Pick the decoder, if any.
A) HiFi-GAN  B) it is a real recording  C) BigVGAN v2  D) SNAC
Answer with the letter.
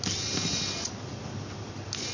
B